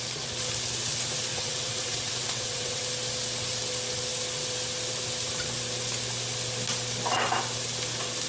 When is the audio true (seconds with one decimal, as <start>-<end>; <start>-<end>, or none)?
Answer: 0.0-1.3; 2.8-8.3